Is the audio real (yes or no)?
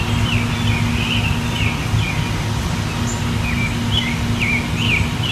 yes